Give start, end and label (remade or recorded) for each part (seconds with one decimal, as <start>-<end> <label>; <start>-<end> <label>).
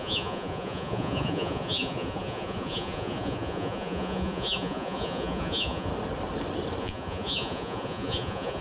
0.0-5.9 remade; 5.9-6.8 recorded; 6.8-8.6 remade